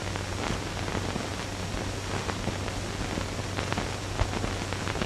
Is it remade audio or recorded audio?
recorded